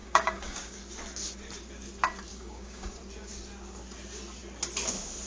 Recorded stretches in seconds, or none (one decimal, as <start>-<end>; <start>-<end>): 0.8-2.3; 3.0-5.3